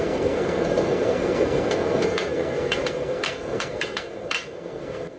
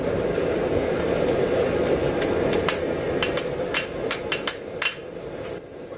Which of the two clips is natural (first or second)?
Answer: second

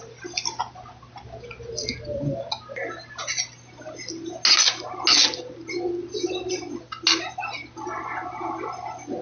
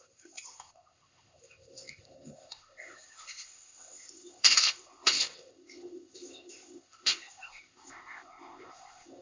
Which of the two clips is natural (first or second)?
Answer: first